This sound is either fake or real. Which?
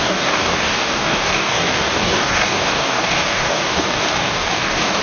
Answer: fake